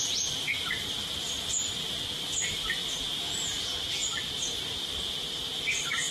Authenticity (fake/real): real